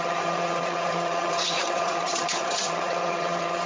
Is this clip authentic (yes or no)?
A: no